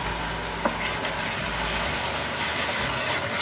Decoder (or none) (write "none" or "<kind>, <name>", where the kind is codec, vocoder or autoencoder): none